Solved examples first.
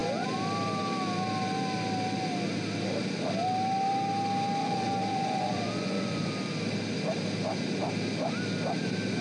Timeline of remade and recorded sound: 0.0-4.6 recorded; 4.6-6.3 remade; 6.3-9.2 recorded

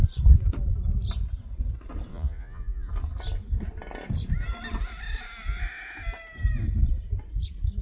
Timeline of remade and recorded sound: 0.0-2.1 recorded; 2.1-2.9 remade; 2.9-7.8 recorded

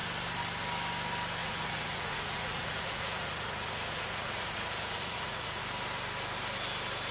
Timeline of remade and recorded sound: 0.0-1.4 recorded; 1.4-5.6 remade; 5.6-7.1 recorded

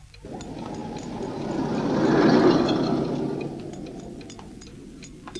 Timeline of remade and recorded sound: 0.0-5.4 recorded

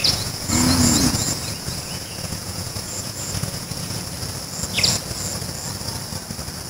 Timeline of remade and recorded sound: 0.0-4.0 remade; 4.0-6.7 recorded

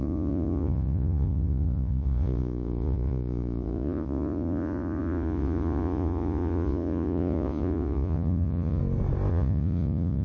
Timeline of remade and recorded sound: 0.0-8.8 remade; 8.8-9.3 recorded; 9.3-10.2 remade

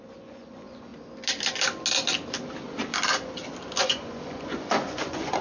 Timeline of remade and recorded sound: 0.0-0.9 remade; 0.9-3.8 recorded; 3.8-5.4 remade

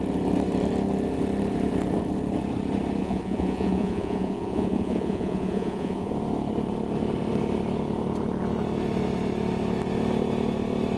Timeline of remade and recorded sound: 0.0-3.0 recorded; 3.0-6.1 remade; 6.1-11.0 recorded